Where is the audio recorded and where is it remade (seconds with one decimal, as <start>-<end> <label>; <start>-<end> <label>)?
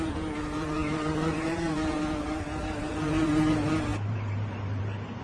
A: 0.0-5.2 remade